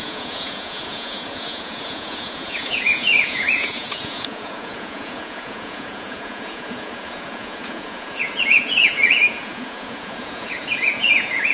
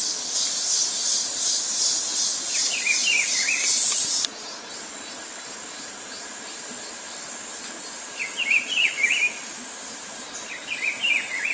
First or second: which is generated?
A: first